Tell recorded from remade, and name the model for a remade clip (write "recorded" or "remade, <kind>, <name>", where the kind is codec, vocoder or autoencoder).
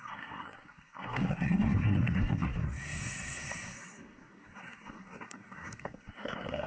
remade, codec, SNAC